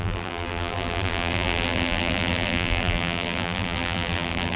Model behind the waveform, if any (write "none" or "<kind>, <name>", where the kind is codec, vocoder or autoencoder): vocoder, BigVGAN v2